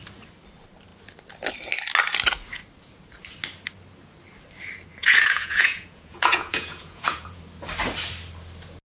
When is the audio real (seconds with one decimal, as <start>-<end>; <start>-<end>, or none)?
0.0-5.0; 7.4-8.8